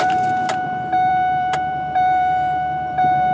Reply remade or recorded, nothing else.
remade